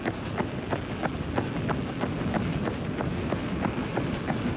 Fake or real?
real